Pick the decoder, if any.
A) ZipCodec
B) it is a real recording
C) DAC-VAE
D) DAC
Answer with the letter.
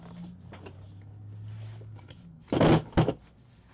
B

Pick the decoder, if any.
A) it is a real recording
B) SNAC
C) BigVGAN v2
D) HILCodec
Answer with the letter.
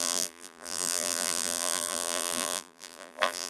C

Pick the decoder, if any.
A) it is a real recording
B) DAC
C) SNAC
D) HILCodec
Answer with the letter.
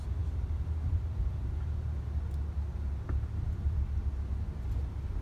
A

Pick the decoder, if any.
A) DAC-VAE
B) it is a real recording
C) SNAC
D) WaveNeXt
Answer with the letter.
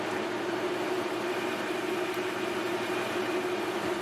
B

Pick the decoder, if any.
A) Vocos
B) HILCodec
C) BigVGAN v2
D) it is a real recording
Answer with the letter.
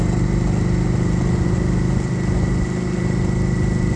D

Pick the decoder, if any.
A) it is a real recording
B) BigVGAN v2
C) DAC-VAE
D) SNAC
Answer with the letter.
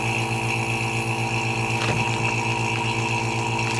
A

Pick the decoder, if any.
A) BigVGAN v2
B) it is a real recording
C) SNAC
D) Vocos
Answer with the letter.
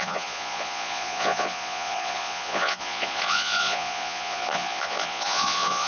D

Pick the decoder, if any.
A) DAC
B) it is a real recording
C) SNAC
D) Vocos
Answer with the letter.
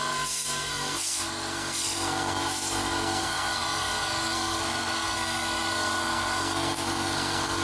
C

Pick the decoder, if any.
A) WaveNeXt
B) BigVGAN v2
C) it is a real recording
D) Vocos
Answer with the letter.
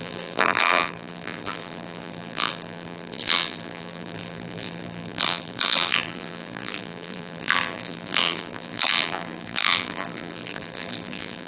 B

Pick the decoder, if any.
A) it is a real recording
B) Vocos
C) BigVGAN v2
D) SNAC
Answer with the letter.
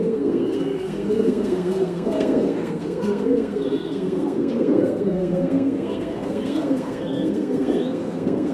D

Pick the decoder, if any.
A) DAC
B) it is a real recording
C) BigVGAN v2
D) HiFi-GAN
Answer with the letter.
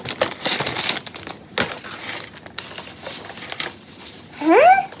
B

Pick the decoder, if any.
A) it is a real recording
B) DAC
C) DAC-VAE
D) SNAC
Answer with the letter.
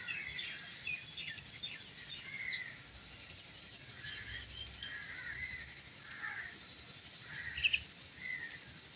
A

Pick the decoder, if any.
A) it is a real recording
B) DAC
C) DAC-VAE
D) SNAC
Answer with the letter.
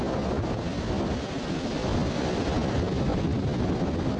A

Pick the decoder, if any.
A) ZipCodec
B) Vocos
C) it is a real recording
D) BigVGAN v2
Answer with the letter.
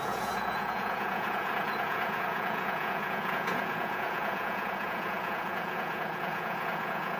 B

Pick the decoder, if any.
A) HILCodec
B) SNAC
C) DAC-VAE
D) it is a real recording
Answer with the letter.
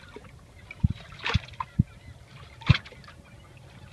D